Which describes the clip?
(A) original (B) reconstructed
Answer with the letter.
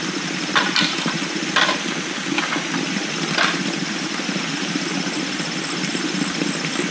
A